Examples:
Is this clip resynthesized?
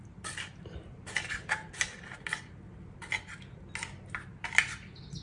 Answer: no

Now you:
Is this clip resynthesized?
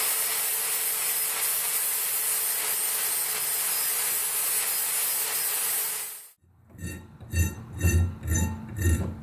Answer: no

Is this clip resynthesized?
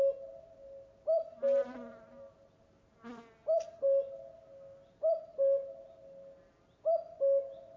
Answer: no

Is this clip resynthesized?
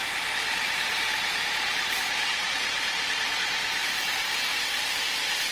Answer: yes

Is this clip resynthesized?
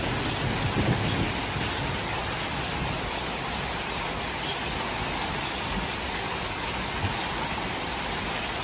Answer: no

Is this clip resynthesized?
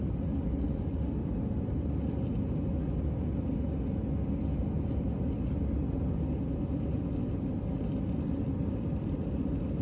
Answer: no